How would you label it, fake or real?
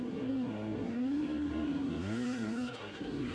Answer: fake